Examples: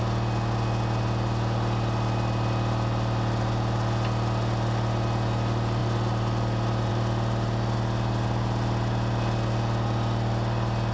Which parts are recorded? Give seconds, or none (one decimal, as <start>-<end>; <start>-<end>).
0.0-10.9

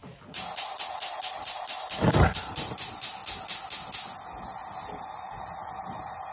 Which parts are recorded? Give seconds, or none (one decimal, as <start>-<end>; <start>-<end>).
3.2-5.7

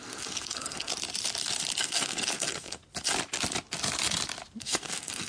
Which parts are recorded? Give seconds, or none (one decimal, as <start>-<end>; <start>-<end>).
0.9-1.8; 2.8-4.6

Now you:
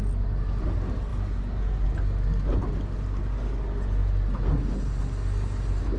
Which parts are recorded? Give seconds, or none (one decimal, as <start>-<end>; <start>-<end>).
0.0-6.0

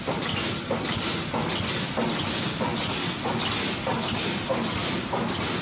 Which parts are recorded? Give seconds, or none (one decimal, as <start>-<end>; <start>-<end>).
0.0-5.6

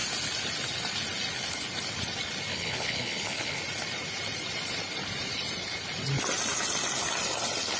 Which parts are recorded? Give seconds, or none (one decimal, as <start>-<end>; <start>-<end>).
0.0-2.5; 3.6-7.8

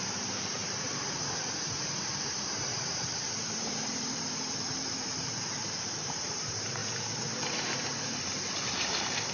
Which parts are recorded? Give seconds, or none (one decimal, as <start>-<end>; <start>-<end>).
none

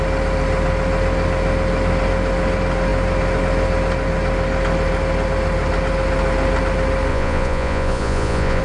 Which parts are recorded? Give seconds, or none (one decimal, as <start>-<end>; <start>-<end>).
0.0-7.1